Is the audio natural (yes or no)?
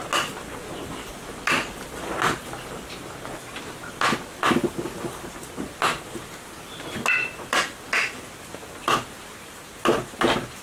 yes